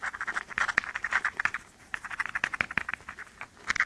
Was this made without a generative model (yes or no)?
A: yes